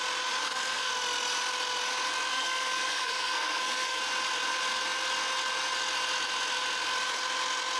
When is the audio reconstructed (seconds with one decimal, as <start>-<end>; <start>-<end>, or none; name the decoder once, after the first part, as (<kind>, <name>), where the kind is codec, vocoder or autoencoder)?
0.4-0.9 (codec, SNAC); 2.3-4.0

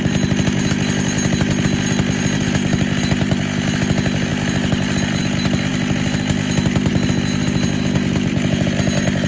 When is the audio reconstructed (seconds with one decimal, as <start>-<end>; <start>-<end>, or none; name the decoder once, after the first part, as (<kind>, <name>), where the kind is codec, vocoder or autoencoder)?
0.0-9.3 (vocoder, BigVGAN v2)

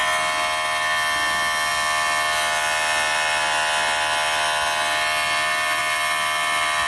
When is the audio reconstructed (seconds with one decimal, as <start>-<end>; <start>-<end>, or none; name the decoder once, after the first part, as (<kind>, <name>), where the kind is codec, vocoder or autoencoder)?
none

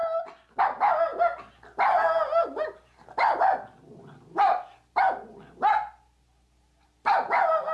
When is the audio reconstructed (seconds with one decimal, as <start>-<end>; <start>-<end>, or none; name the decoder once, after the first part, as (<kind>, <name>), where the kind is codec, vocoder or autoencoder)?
none

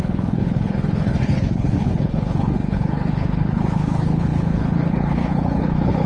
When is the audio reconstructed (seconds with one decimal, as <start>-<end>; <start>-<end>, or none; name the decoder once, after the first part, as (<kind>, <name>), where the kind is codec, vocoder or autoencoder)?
0.0-6.1 (codec, HILCodec)

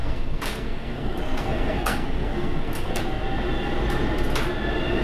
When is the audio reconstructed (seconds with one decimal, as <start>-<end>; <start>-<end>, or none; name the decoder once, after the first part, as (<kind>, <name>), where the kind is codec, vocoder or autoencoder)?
0.0-3.0 (codec, SNAC)

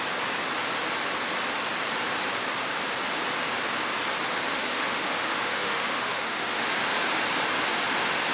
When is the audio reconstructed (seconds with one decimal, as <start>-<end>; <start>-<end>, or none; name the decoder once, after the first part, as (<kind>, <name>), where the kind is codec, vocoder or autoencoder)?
4.5-6.7 (autoencoder, DAC-VAE)

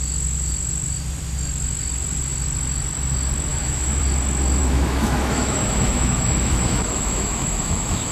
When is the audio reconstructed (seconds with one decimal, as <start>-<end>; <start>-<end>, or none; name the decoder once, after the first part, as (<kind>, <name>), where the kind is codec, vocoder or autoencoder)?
3.5-4.0 (autoencoder, DAC-VAE); 4.6-8.1